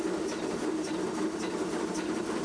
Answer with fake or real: real